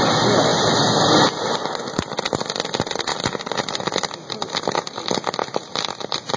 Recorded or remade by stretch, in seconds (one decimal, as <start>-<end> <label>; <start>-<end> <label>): 0.0-6.4 recorded